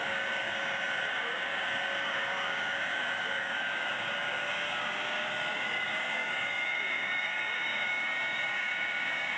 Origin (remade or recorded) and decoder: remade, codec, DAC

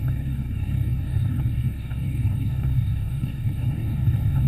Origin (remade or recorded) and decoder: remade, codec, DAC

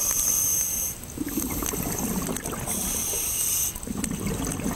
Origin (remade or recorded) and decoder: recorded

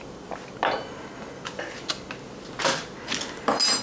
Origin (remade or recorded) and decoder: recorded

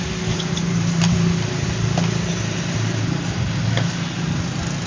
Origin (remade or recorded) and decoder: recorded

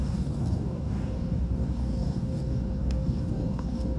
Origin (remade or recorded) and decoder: remade, codec, DAC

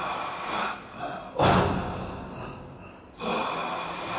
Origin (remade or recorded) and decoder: recorded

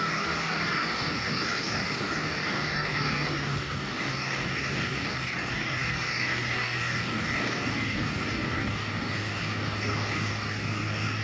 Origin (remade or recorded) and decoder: remade, codec, DAC